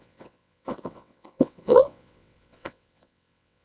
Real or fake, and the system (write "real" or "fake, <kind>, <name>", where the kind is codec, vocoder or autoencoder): fake, vocoder, WaveNeXt